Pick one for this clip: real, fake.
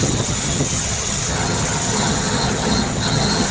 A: fake